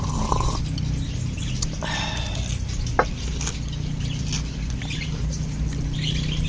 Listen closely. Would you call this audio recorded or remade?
recorded